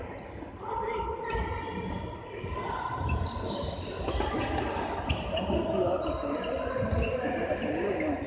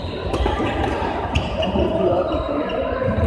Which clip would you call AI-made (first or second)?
second